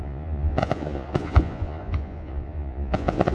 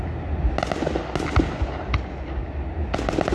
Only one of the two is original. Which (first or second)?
second